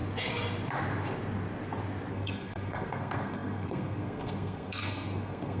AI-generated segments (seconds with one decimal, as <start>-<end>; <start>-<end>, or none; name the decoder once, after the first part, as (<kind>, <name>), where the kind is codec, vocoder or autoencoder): 2.1-5.6 (codec, SNAC)